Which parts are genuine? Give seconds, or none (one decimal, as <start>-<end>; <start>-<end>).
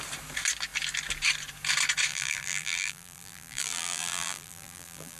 0.0-2.1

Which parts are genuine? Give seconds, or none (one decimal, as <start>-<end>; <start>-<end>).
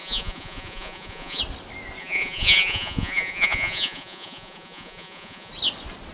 1.4-2.0; 5.5-6.1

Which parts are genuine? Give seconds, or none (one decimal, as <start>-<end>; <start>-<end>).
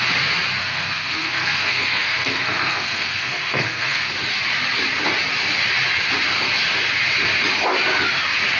0.0-0.6; 4.1-8.6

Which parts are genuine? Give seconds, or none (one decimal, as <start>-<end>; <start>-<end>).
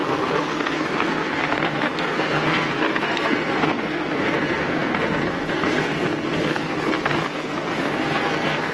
none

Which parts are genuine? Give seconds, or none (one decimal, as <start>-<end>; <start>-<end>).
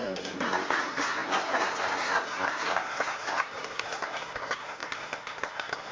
none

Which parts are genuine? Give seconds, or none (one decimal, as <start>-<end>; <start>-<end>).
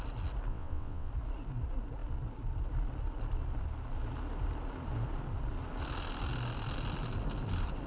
0.0-0.5; 1.1-7.9